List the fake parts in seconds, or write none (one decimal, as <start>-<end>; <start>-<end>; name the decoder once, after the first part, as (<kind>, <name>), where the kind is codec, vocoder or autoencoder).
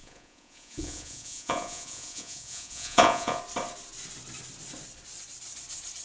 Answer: 0.0-3.4 (vocoder, Vocos)